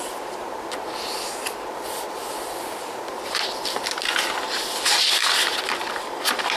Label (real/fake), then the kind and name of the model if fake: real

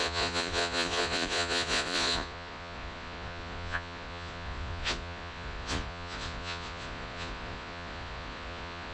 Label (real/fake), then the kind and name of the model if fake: fake, vocoder, Vocos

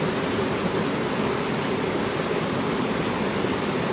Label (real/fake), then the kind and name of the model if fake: real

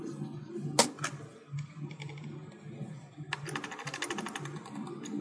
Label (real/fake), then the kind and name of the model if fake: real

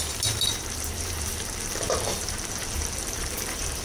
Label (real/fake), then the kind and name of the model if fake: fake, vocoder, BigVGAN v2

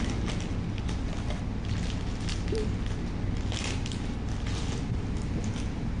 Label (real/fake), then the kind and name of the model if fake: real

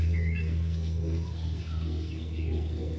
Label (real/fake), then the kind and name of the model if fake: fake, codec, SNAC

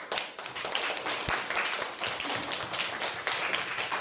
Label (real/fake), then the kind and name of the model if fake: real